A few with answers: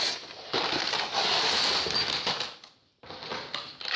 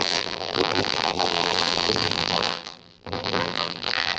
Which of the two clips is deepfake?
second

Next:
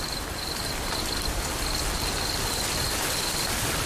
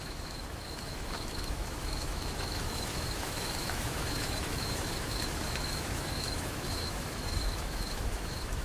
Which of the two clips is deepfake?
second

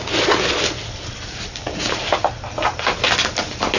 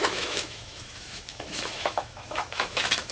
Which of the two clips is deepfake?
second